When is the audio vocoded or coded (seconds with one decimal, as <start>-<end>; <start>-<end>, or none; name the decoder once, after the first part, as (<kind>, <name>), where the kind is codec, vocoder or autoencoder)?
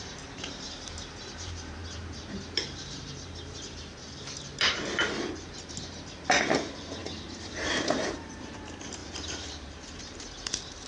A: 0.0-7.0 (vocoder, BigVGAN v2); 7.5-10.9